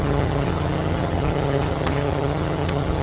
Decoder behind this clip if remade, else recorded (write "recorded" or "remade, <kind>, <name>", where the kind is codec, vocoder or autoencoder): remade, vocoder, HiFi-GAN